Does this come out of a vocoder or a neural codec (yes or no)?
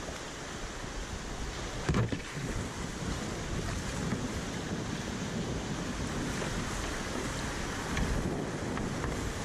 no